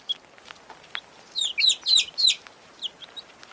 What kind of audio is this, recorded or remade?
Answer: recorded